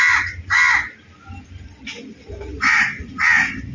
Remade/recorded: recorded